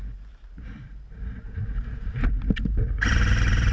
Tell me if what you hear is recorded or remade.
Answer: remade